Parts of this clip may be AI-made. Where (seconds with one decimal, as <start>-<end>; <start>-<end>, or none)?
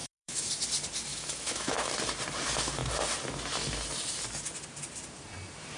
0.0-0.5; 1.1-1.9